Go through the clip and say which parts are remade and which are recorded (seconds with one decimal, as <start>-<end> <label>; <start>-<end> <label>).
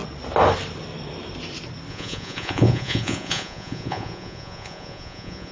0.0-1.9 recorded; 1.9-5.5 remade